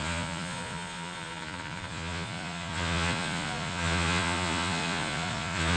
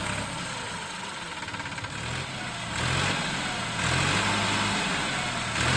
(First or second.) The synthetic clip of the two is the first